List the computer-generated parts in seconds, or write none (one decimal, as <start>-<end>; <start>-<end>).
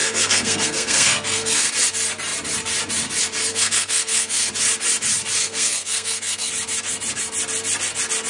0.0-1.7; 3.5-4.5; 5.4-6.5